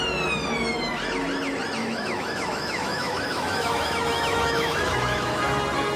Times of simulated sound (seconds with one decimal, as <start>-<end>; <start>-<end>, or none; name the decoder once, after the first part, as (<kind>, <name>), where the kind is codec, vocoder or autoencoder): 1.8-5.4 (autoencoder, DAC-VAE)